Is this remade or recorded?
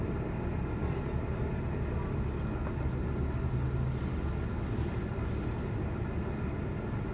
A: recorded